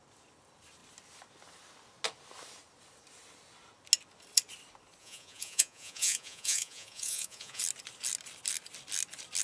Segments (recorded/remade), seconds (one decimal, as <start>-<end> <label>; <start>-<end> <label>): 0.0-5.0 recorded; 5.0-7.6 remade; 7.6-9.4 recorded